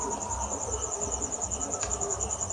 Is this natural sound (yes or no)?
yes